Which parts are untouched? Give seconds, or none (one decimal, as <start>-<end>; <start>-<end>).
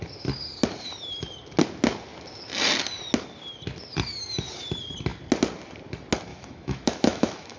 0.0-6.3